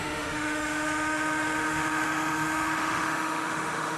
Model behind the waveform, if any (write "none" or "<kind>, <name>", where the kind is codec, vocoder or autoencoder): autoencoder, DAC-VAE